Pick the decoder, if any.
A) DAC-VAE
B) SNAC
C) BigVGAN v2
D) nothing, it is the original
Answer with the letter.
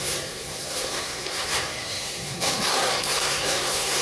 B